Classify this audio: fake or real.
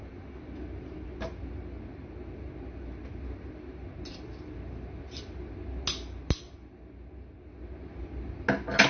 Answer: real